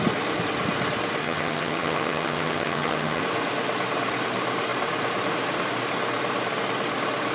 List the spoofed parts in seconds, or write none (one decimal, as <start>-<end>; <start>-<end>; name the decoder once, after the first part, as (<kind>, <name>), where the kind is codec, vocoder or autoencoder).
1.2-3.2 (vocoder, HiFi-GAN)